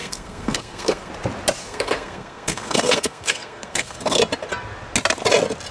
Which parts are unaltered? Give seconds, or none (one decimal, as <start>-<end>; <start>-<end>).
1.1-1.6; 4.2-5.7